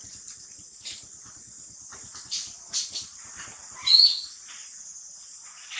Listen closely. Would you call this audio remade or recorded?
recorded